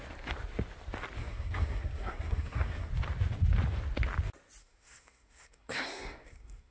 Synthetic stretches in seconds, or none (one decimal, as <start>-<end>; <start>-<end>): 1.2-2.9; 4.6-6.7